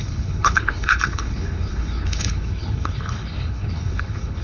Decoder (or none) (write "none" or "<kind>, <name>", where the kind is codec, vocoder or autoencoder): codec, HILCodec